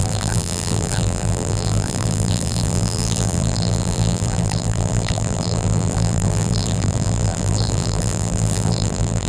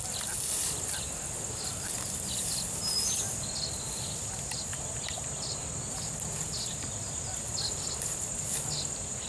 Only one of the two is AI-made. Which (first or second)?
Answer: first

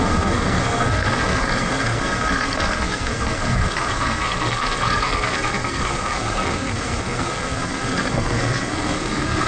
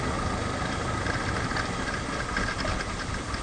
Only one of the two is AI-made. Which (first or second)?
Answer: first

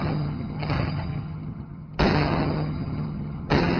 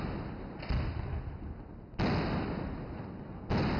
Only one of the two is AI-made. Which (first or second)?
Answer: first